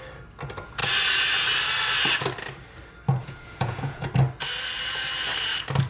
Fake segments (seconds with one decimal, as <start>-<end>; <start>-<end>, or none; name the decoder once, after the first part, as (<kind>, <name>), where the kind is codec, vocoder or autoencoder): 3.2-4.1 (vocoder, Vocos)

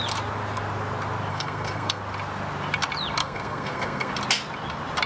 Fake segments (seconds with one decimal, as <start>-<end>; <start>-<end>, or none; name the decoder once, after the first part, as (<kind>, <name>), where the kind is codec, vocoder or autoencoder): 1.3-2.0 (codec, SNAC); 3.2-4.1